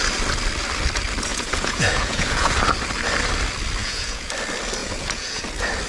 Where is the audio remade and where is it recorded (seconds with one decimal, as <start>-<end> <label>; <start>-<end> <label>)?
0.0-1.3 recorded; 1.3-2.6 remade; 2.6-3.8 recorded; 3.8-4.3 remade; 4.3-4.8 recorded; 4.8-5.4 remade; 5.4-5.9 recorded